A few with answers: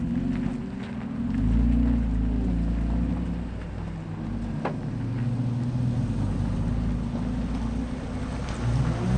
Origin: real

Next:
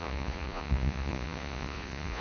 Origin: fake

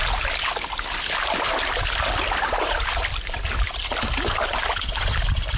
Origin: real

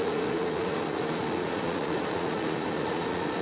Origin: fake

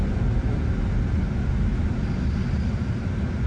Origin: real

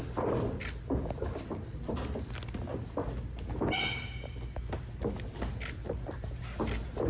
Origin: real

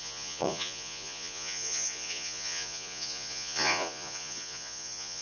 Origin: fake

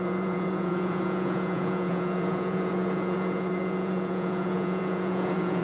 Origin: fake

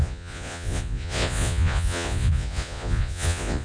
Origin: fake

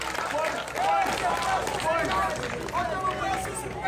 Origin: real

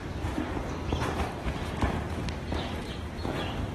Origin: real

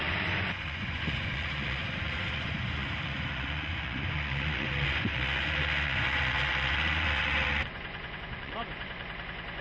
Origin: fake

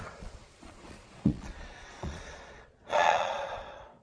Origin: fake